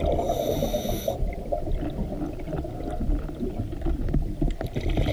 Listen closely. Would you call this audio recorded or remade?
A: recorded